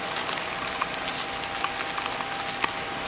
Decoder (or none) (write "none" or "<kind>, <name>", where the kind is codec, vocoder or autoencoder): none